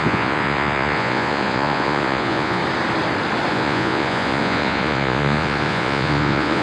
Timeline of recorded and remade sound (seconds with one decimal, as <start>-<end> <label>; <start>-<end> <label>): 0.0-2.6 remade; 2.6-3.5 recorded; 3.5-6.6 remade

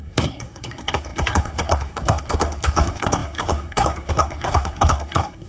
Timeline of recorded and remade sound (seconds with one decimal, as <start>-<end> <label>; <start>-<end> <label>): 0.0-5.5 remade

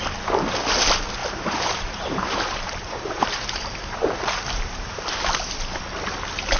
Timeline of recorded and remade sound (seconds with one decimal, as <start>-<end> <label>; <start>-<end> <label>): 0.0-1.2 recorded; 1.2-5.0 remade; 5.0-6.6 recorded

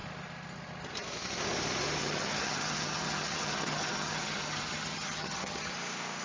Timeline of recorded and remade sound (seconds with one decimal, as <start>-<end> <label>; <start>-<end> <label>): 0.0-2.0 recorded; 2.0-5.7 remade; 5.7-6.2 recorded

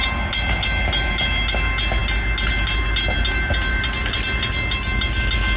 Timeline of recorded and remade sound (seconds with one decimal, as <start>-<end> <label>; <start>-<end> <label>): 0.0-5.6 recorded